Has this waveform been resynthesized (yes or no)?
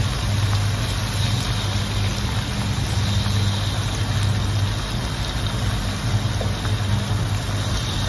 no